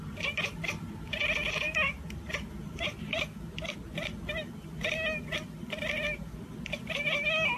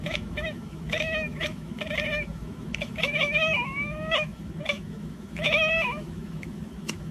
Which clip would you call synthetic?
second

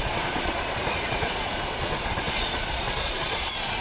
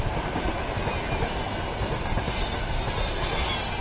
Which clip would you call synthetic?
first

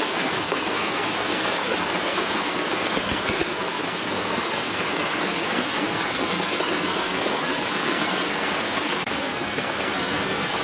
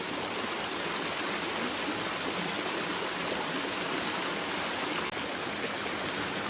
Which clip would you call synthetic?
first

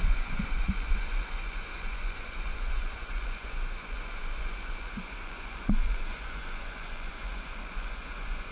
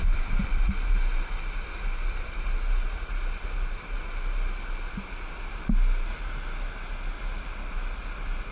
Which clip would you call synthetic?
first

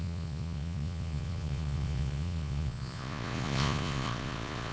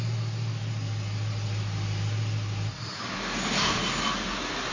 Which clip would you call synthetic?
first